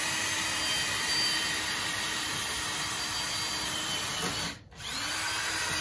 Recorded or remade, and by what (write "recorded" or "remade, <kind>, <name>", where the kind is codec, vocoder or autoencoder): remade, vocoder, BigVGAN v2